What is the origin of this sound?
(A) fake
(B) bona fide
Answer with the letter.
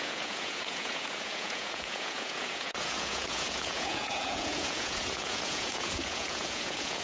A